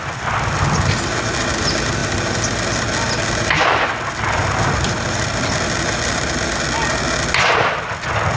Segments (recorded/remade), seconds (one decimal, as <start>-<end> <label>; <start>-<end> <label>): 0.0-8.4 recorded